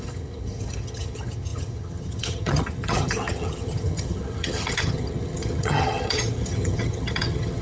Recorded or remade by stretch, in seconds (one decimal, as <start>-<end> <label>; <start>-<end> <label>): 0.0-7.6 remade